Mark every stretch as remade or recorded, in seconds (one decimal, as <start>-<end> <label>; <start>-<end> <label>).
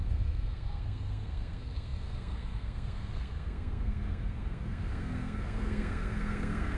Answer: 0.0-6.8 remade